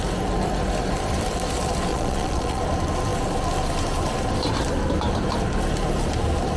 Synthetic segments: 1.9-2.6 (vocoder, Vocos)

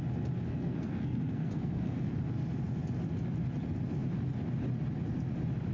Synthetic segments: 0.5-2.1 (codec, SNAC)

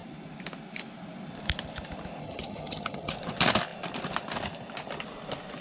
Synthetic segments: 2.2-3.1 (vocoder, HiFi-GAN)

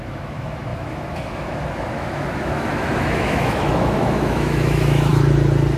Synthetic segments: 0.0-5.1 (autoencoder, DAC-VAE)

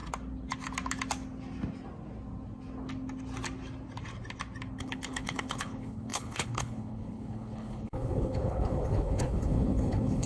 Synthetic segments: 4.8-10.3 (codec, HILCodec)

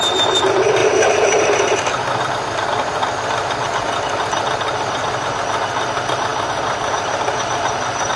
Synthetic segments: 0.8-1.6 (vocoder, BigVGAN v2)

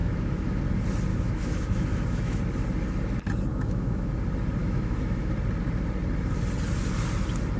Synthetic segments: 0.0-0.6 (autoencoder, DAC-VAE); 1.1-2.4; 3.5-4.1; 4.6-5.3

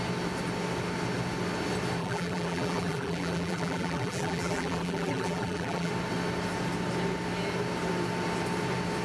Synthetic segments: 2.0-5.9 (vocoder, BigVGAN v2)